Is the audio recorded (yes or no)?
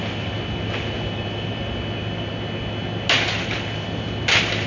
yes